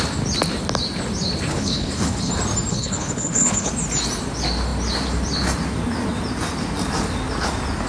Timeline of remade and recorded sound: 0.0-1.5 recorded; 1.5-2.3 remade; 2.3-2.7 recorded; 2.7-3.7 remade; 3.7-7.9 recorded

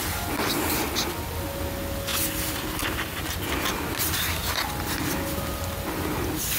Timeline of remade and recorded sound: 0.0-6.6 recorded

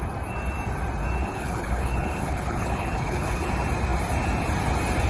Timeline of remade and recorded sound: 0.0-1.2 recorded; 1.2-3.5 remade; 3.5-5.1 recorded

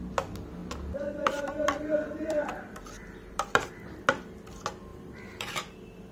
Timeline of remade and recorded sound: 0.0-0.6 recorded; 0.6-3.7 remade; 3.7-4.9 recorded; 4.9-5.5 remade; 5.5-6.1 recorded

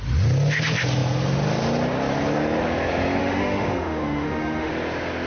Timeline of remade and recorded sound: 0.0-3.2 recorded; 3.2-4.7 remade; 4.7-5.3 recorded

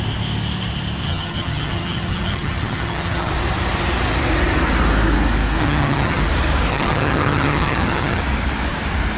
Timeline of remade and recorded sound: 0.0-1.0 recorded; 1.0-3.3 remade; 3.3-5.6 recorded; 5.6-6.2 remade; 6.2-6.7 recorded; 6.7-8.2 remade; 8.2-9.2 recorded